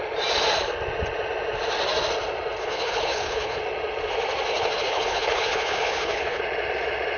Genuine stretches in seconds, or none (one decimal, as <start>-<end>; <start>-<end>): 0.0-2.6; 3.6-4.5; 6.4-7.2